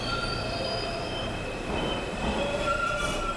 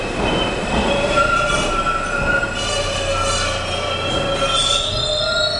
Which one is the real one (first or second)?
second